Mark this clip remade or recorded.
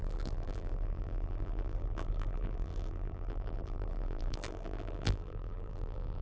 remade